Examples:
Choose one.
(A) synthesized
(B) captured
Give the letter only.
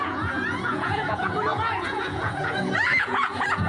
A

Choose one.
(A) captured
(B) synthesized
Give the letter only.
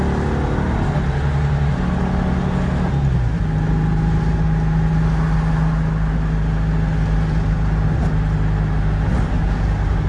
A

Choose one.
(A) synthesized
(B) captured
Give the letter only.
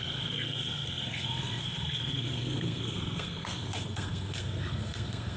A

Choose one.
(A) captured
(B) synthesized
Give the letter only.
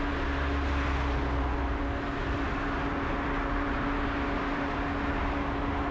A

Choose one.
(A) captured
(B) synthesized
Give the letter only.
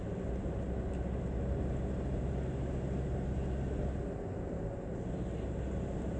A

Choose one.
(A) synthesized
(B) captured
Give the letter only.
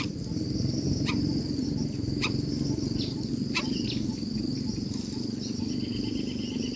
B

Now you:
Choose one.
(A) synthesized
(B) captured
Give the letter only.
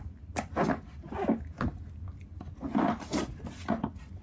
B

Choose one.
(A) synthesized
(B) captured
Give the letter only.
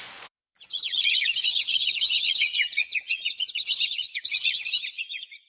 A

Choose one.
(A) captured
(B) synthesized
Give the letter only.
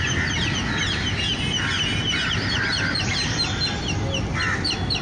A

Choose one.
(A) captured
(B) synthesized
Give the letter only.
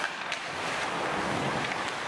A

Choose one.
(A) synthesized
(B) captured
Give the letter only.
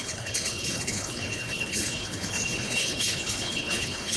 A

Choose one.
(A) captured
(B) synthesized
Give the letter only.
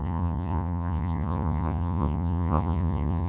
B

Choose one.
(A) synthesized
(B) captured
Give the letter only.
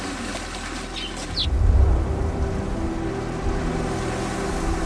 B